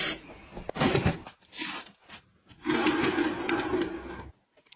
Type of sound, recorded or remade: recorded